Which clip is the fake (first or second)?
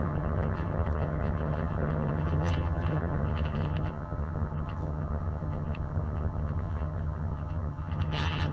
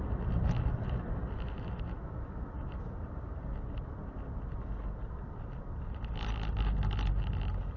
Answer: first